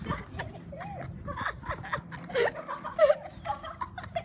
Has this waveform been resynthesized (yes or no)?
no